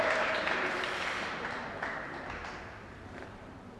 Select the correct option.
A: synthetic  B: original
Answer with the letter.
A